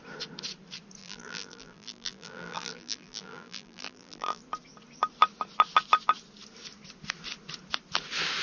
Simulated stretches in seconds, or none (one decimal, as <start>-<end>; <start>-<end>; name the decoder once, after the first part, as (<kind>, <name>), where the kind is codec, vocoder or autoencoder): 1.0-4.4 (vocoder, BigVGAN v2)